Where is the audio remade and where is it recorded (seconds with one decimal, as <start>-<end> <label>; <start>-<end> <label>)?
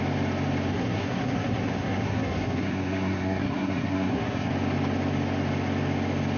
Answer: 0.0-0.7 recorded; 0.7-4.5 remade; 4.5-6.4 recorded